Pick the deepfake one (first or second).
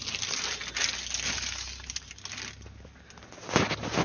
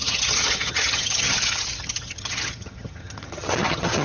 second